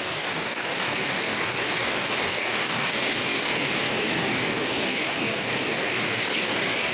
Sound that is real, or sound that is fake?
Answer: fake